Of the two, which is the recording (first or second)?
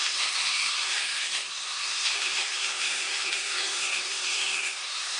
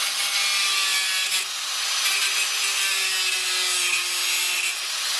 second